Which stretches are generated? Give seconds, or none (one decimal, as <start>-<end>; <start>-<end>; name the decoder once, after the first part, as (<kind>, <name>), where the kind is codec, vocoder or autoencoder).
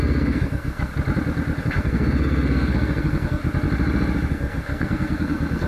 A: 0.0-0.9 (codec, SNAC); 1.6-3.4; 4.3-5.7